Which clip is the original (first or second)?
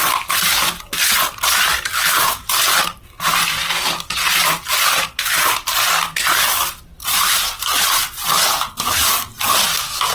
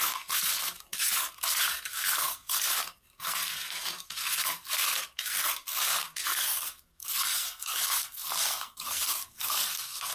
first